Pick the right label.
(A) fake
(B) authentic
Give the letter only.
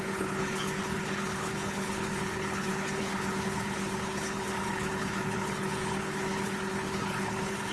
A